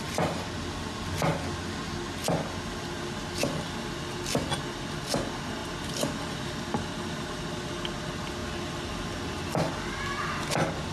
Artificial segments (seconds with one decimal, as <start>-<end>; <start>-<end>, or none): none